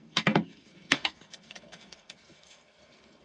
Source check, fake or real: fake